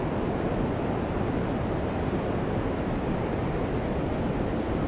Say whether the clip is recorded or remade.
recorded